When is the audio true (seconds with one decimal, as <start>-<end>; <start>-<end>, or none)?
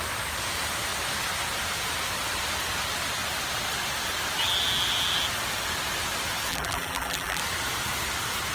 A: 0.0-6.5; 7.4-8.5